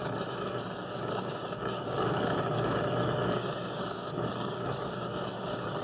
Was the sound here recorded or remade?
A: remade